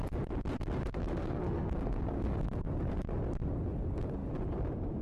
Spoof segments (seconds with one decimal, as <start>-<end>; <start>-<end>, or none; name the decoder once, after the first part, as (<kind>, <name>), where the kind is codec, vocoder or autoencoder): 0.8-2.7 (codec, SNAC)